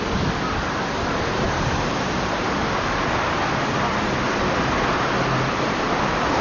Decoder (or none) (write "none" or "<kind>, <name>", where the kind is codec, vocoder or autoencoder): none